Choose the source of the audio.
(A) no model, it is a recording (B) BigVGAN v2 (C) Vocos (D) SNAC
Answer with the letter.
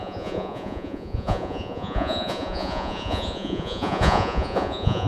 C